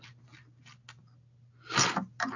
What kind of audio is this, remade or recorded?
recorded